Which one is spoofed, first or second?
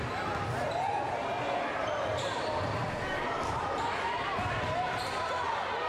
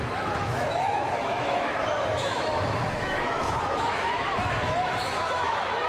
second